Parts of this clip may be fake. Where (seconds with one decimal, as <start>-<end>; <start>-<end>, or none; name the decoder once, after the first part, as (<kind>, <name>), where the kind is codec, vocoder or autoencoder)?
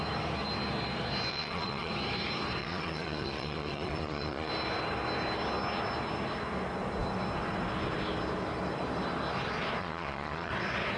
1.3-1.9 (vocoder, Vocos); 2.6-4.5; 9.8-10.5